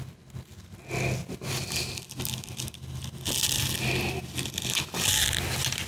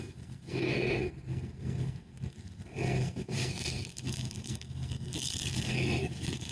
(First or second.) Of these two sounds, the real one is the first